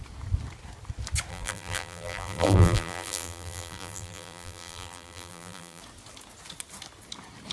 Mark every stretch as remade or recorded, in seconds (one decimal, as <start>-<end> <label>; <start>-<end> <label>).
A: 0.0-1.3 recorded; 1.3-5.8 remade; 5.8-7.5 recorded